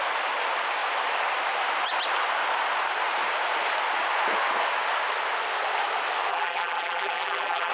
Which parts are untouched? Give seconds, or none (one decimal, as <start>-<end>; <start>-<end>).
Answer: 0.0-6.3

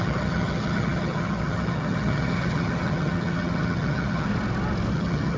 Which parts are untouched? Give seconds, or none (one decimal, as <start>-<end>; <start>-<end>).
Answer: 4.3-4.9